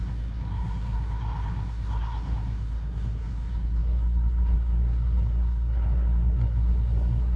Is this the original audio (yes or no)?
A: no